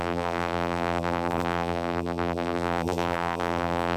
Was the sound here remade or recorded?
remade